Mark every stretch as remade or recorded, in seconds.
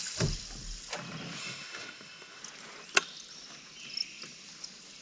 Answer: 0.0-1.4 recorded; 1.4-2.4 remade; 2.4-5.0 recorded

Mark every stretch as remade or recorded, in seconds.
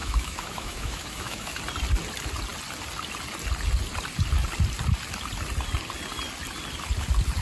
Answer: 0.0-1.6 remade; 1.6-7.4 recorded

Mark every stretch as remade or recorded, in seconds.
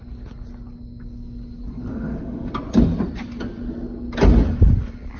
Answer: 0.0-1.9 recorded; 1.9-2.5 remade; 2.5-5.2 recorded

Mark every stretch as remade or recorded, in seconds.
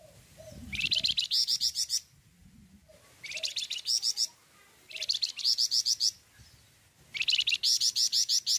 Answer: 0.0-8.6 recorded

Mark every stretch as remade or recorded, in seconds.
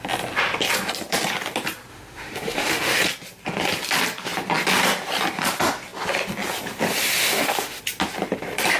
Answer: 0.0-1.9 recorded; 1.9-3.0 remade; 3.0-7.2 recorded; 7.2-7.8 remade; 7.8-8.8 recorded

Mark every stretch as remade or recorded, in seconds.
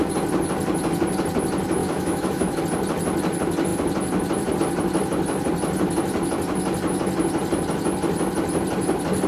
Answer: 0.0-1.8 recorded; 1.8-2.6 remade; 2.6-9.3 recorded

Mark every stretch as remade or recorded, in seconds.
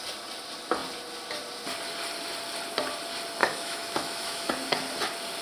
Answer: 0.0-3.4 recorded; 3.4-4.5 remade; 4.5-5.4 recorded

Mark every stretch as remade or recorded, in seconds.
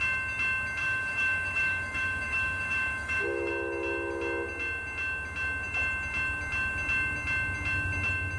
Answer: 0.0-0.8 recorded; 0.8-3.5 remade; 3.5-8.4 recorded